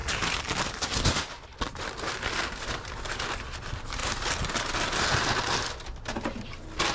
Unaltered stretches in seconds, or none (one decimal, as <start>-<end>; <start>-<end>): 0.0-6.9